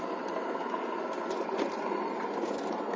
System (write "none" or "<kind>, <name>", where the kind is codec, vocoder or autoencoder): none